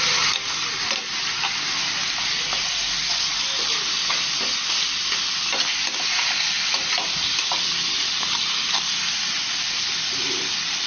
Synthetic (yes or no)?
no